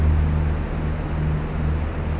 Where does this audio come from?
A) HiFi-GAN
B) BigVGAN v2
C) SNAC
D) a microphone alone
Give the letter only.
D